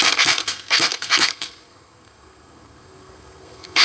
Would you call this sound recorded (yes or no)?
no